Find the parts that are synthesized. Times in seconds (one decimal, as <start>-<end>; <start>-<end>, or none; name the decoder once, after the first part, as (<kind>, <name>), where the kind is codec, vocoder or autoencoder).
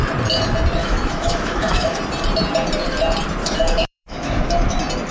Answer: 0.8-2.0 (autoencoder, DAC-VAE); 3.4-4.5